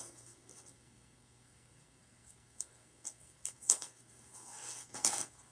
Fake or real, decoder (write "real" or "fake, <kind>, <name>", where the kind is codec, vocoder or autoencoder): fake, codec, SNAC